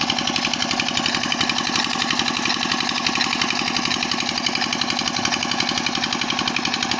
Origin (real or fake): real